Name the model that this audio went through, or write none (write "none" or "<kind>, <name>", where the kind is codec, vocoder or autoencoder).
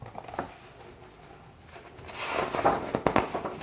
none